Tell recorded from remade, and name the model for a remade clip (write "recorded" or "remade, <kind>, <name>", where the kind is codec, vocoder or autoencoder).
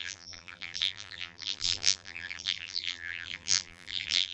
remade, vocoder, BigVGAN v2